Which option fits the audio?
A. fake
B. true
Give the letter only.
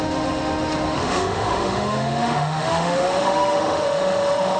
A